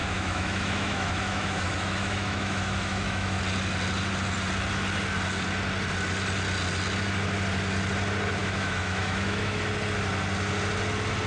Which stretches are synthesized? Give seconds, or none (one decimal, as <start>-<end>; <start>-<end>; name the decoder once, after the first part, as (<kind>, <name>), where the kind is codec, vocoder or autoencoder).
0.0-3.4 (autoencoder, DAC-VAE); 8.4-9.6